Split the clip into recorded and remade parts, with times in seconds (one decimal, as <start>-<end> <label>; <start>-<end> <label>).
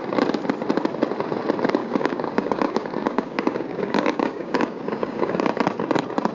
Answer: 0.0-1.8 recorded; 1.8-5.5 remade; 5.5-6.3 recorded